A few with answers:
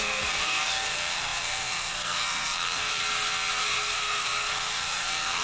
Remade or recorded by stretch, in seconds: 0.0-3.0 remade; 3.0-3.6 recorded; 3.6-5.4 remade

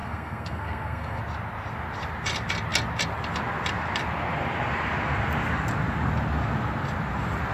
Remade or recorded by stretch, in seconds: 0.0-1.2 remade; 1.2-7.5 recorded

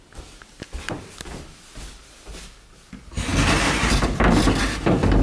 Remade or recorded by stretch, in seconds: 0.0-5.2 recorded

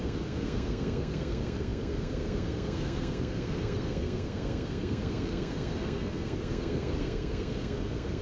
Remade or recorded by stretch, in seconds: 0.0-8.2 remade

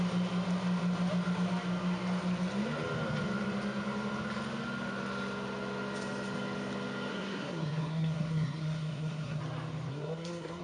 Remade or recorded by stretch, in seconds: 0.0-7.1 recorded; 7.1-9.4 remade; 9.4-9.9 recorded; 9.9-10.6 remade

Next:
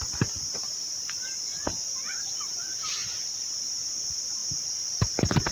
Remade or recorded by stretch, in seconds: 0.0-5.5 recorded